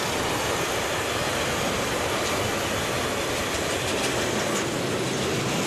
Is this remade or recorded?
recorded